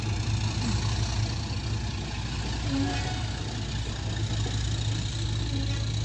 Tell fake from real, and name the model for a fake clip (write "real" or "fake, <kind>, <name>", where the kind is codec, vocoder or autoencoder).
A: real